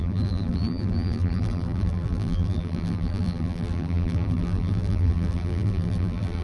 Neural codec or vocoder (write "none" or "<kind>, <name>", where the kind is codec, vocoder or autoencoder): vocoder, BigVGAN v2